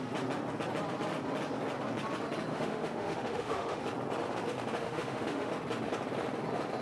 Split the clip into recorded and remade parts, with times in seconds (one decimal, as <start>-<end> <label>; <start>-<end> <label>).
0.0-2.5 recorded; 2.5-3.8 remade; 3.8-4.8 recorded; 4.8-5.5 remade; 5.5-6.8 recorded